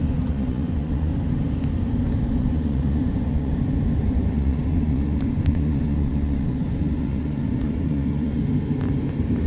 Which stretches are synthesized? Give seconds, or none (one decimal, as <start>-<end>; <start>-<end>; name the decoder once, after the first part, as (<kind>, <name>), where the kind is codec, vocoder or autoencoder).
0.0-1.1 (vocoder, Vocos); 2.4-3.5; 4.0-8.4